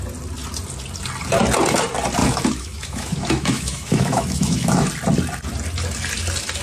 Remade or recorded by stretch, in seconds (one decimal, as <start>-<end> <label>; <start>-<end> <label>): 0.0-2.2 recorded; 2.2-4.9 remade; 4.9-6.6 recorded